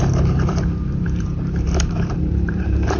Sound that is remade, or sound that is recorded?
remade